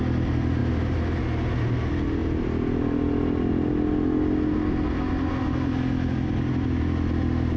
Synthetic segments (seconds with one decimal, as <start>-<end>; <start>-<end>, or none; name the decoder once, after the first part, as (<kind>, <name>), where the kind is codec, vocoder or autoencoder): none